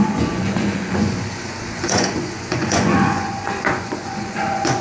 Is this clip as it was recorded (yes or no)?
no